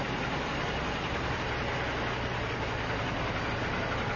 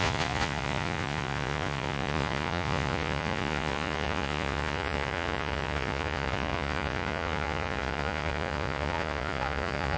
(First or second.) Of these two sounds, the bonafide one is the first